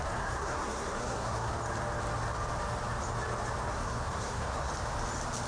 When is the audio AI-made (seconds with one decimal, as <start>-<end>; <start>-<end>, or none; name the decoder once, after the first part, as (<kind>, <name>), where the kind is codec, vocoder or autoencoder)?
0.0-1.5 (codec, SNAC); 3.7-4.7